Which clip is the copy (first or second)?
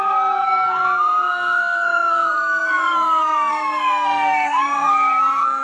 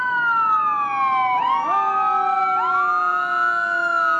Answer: first